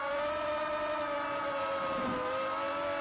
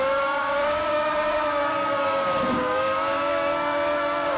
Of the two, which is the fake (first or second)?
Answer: second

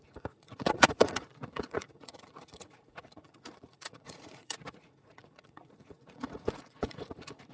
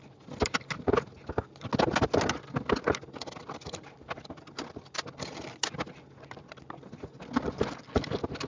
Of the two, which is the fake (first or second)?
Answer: first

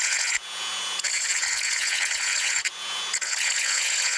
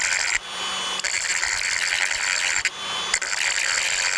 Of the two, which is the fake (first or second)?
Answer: first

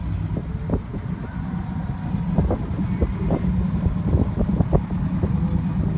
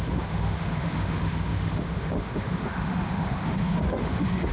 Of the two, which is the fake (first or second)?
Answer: second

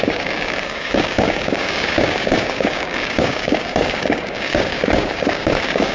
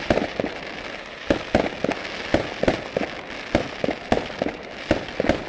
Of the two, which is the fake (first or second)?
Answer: first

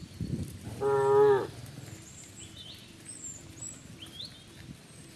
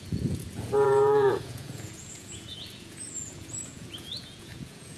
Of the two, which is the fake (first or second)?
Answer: second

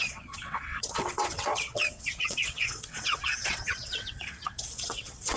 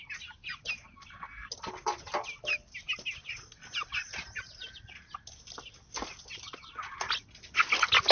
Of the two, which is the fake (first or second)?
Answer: first